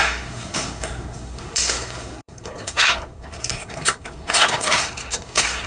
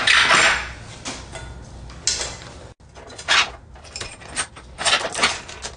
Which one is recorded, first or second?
second